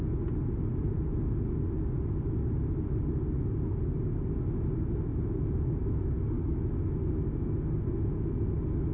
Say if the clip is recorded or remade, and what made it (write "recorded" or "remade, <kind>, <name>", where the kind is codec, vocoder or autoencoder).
recorded